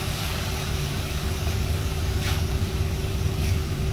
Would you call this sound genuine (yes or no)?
no